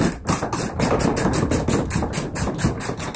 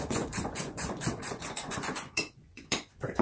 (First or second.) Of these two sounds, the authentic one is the first